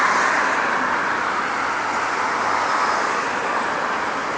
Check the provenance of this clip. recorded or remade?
recorded